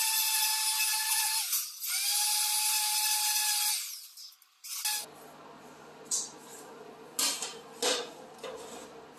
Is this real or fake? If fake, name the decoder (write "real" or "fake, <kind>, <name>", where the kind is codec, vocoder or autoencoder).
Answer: real